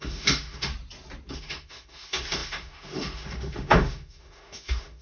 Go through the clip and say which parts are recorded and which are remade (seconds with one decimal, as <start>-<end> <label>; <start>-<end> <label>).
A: 0.0-0.7 remade; 0.7-1.3 recorded; 1.3-5.0 remade